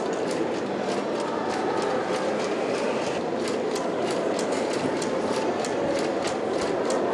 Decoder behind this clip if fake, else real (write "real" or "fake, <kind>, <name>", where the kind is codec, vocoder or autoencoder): real